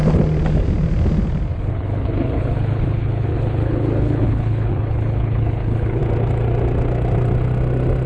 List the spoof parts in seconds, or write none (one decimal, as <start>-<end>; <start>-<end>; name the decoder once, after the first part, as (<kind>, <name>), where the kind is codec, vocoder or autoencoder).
1.5-6.0 (codec, HILCodec)